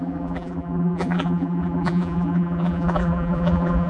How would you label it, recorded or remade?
remade